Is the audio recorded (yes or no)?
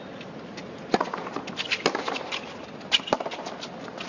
yes